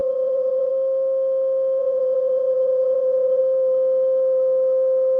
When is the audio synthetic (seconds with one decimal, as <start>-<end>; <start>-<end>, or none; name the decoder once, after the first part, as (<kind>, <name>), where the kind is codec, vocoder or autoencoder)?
0.0-0.7 (vocoder, WaveNeXt); 1.8-3.4